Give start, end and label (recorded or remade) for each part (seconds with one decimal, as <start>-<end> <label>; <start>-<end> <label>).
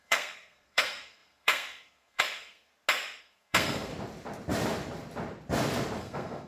0.0-2.7 remade; 2.7-3.2 recorded; 3.2-3.9 remade; 3.9-6.0 recorded; 6.0-6.5 remade